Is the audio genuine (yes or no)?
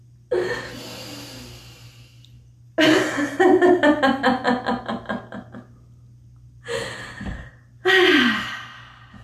yes